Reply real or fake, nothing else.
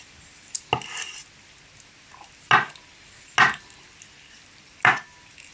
real